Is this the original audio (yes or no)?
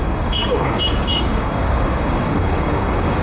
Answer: no